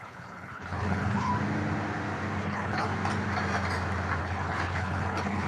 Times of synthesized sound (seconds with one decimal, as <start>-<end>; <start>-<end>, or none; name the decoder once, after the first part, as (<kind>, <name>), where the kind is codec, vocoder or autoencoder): 0.0-1.3 (codec, HILCodec); 2.4-2.9; 4.2-5.5